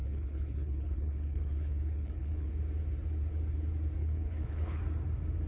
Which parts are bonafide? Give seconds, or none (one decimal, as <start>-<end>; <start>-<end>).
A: 2.5-4.0; 4.8-5.5